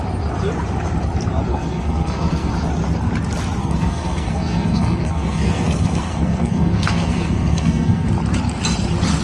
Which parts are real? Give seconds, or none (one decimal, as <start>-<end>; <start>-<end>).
0.0-1.5; 2.5-3.6; 8.1-9.2